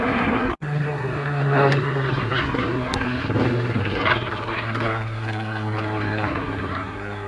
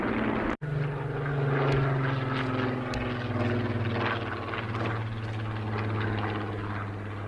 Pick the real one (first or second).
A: second